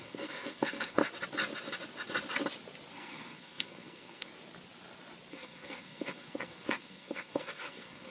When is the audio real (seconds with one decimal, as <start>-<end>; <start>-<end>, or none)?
1.0-2.9; 4.3-5.3